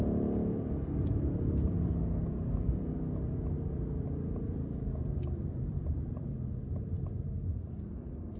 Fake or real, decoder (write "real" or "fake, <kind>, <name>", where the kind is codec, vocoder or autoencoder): fake, vocoder, BigVGAN v2